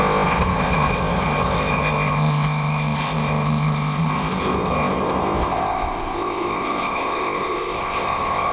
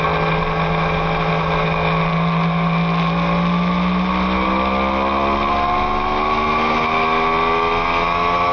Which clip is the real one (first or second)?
second